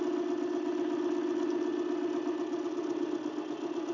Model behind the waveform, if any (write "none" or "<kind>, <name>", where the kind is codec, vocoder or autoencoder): none